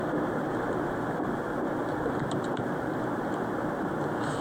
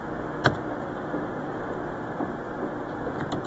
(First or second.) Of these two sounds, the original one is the second